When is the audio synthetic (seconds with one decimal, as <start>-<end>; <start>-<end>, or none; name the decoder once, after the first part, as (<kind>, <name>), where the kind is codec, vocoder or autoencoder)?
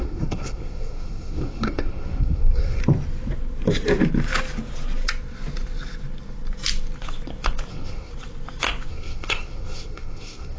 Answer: 0.0-2.8 (codec, SNAC); 7.7-8.1; 8.9-10.6